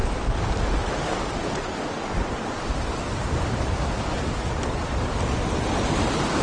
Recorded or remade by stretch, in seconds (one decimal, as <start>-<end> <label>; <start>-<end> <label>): 0.0-6.4 recorded